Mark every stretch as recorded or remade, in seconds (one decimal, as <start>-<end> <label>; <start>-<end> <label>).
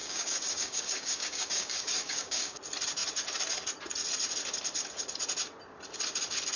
0.0-2.6 remade; 2.6-6.6 recorded